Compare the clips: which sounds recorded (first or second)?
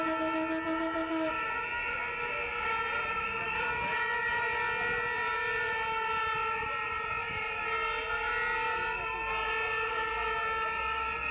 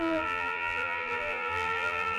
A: first